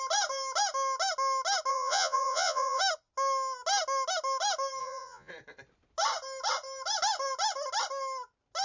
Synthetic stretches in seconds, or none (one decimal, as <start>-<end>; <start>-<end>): 1.7-2.8; 4.8-5.3